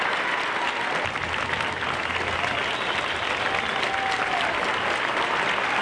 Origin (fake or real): real